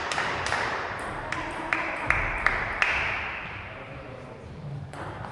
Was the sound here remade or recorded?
remade